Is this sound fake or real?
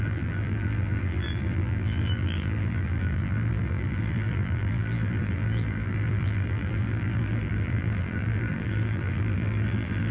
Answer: fake